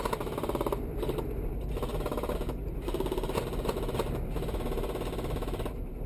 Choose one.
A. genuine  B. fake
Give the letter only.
A